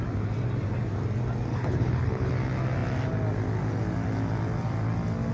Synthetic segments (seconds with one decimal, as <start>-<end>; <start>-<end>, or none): 1.5-2.3